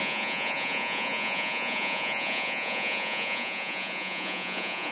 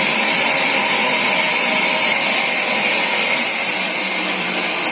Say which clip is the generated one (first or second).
first